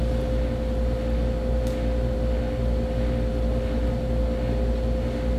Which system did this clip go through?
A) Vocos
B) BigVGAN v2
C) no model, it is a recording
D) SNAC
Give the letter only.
C